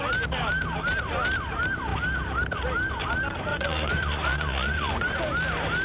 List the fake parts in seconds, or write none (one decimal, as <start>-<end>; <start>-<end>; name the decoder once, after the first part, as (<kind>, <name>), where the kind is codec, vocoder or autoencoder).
3.5-5.2 (vocoder, Vocos)